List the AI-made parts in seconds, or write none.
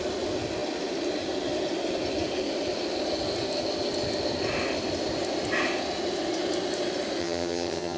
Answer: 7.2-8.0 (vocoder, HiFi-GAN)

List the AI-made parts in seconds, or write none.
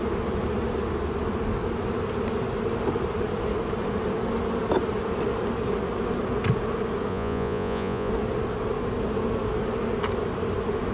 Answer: 7.1-8.1 (vocoder, Vocos)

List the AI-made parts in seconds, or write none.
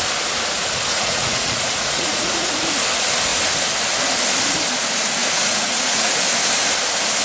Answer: 0.9-2.5 (vocoder, Vocos); 5.2-6.2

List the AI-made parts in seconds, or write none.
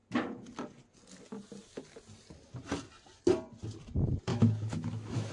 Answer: 4.3-5.3 (autoencoder, DAC-VAE)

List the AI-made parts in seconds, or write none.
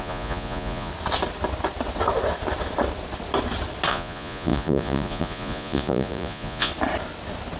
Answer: 0.0-0.9 (vocoder, Vocos); 3.9-6.7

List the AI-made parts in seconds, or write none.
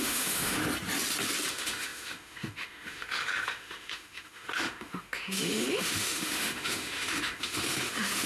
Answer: 0.0-0.6 (autoencoder, DAC-VAE); 1.5-8.3